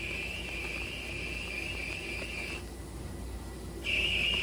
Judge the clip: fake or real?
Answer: real